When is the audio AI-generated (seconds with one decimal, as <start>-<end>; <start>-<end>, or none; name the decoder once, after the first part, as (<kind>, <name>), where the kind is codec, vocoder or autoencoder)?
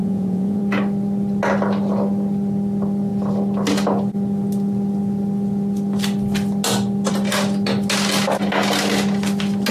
0.0-0.6 (vocoder, Vocos)